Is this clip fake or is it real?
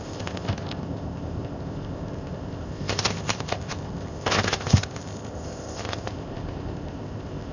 fake